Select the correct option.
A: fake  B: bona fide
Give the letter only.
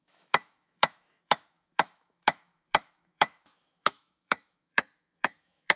A